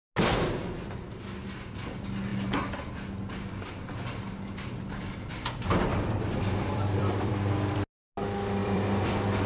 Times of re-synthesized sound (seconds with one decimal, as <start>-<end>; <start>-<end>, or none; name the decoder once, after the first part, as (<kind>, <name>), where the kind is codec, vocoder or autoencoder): 5.9-7.3 (vocoder, BigVGAN v2); 8.6-9.5